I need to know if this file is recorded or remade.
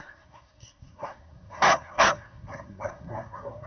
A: remade